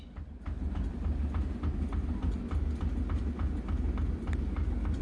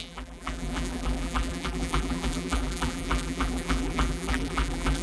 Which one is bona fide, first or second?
first